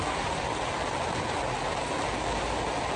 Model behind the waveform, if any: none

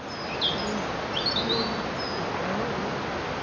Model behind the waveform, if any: none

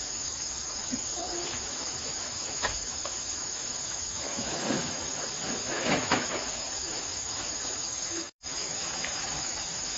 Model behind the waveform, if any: autoencoder, DAC-VAE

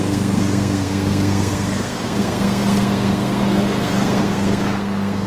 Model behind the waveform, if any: codec, SNAC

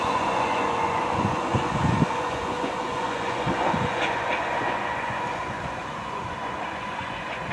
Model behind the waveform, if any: vocoder, Vocos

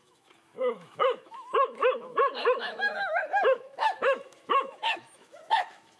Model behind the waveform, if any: autoencoder, DAC-VAE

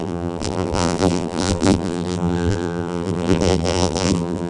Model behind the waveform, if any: vocoder, BigVGAN v2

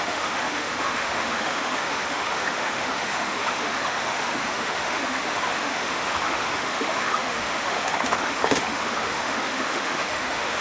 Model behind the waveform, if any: autoencoder, DAC-VAE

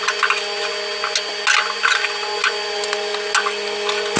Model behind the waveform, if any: none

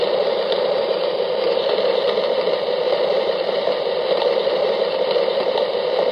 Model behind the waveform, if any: vocoder, BigVGAN v2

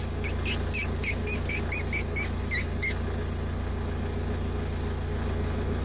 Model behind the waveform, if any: none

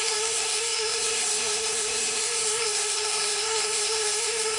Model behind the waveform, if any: codec, SNAC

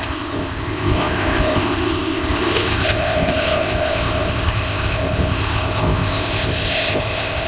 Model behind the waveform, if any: codec, ZipCodec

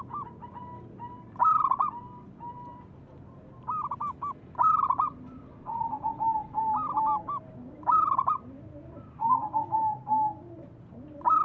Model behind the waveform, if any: none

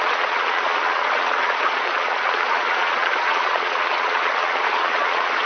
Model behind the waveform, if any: vocoder, Vocos